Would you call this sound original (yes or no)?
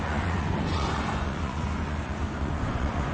no